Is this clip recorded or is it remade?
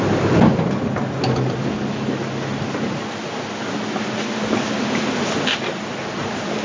recorded